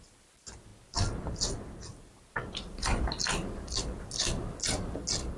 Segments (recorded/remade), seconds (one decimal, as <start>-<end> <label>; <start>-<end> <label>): 0.0-5.4 recorded